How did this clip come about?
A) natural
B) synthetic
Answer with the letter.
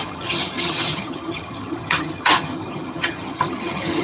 B